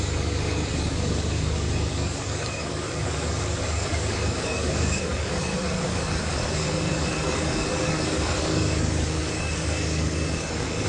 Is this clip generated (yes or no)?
yes